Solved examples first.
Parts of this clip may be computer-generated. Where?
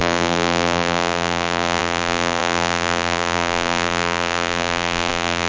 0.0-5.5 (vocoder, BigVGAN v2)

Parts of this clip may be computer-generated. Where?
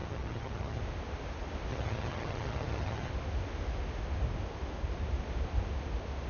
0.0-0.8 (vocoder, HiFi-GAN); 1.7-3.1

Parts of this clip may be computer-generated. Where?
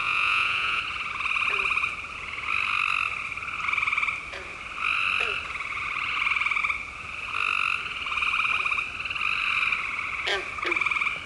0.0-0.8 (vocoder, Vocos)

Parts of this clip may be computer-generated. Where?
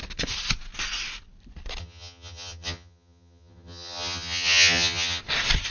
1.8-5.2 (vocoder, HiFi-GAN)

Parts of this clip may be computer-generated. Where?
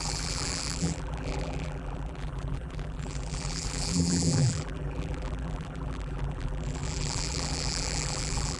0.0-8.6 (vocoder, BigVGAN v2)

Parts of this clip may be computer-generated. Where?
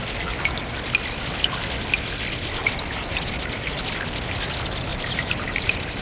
2.6-3.8 (vocoder, BigVGAN v2); 4.9-6.0